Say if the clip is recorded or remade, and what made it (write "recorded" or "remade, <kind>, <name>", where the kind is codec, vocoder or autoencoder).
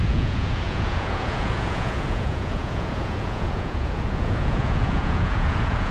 remade, vocoder, Vocos